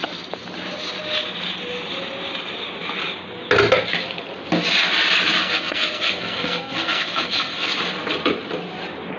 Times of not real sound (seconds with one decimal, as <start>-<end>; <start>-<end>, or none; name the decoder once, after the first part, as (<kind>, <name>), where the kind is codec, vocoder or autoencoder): 5.4-7.7 (codec, SNAC)

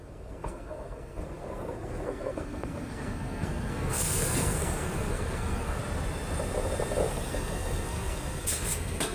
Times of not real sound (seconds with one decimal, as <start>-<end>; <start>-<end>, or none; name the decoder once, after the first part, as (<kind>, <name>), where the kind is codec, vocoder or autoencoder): 0.0-5.8 (codec, SNAC); 7.1-9.1

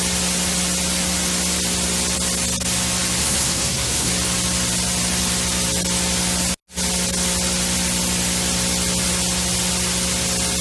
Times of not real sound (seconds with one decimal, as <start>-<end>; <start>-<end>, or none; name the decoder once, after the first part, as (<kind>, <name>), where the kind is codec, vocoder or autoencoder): 3.2-4.1 (codec, SNAC)

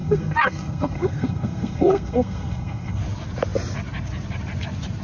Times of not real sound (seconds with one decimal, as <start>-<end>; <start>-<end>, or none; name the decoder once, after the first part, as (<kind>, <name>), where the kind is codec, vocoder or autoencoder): 0.0-3.0 (codec, SNAC)

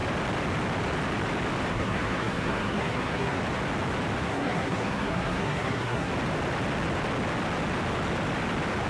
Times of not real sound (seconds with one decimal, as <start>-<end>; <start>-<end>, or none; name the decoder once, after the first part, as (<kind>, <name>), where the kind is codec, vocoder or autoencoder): 1.7-3.4 (codec, SNAC); 4.2-6.1

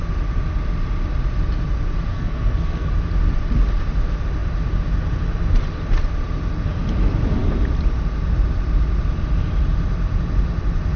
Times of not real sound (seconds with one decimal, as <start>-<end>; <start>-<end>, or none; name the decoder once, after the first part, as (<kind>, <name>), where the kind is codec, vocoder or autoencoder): 2.1-2.9 (codec, SNAC)

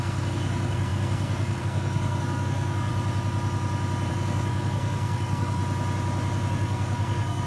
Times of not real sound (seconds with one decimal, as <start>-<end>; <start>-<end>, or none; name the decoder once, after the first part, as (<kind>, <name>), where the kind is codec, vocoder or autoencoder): 0.0-2.9 (codec, SNAC); 4.1-5.6; 6.5-7.5